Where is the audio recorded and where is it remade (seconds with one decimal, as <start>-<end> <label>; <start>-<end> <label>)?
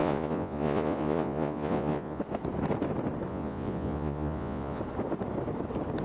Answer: 0.0-2.2 remade; 2.2-3.3 recorded; 3.3-4.8 remade; 4.8-6.0 recorded